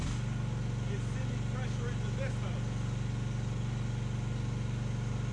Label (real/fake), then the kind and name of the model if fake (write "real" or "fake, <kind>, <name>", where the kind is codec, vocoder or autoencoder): real